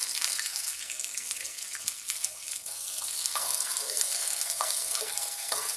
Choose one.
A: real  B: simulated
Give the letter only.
B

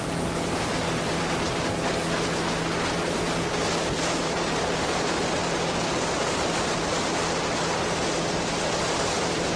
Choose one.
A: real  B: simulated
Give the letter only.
A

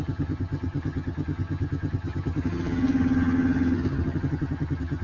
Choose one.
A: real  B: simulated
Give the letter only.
B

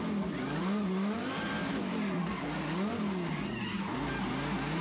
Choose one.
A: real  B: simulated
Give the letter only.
A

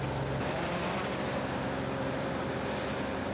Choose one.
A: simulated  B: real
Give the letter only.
B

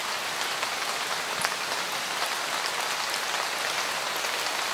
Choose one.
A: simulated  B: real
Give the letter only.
B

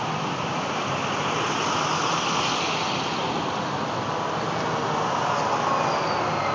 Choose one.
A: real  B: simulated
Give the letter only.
A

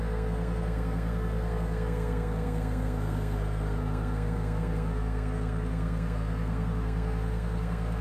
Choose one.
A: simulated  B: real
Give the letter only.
A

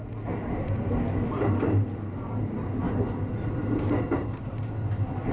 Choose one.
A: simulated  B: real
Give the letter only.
B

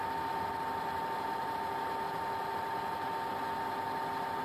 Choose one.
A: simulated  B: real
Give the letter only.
A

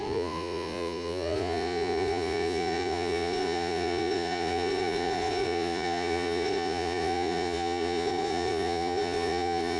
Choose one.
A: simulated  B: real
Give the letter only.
A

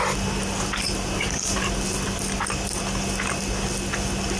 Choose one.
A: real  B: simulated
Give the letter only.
A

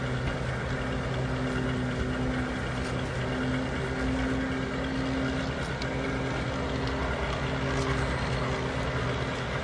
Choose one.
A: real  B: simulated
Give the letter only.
A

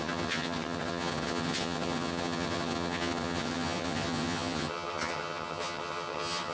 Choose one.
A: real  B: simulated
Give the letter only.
B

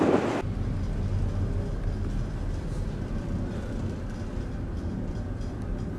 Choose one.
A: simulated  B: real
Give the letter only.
B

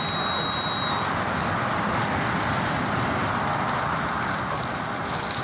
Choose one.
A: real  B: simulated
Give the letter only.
A